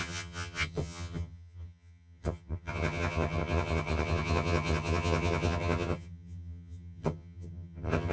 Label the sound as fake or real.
fake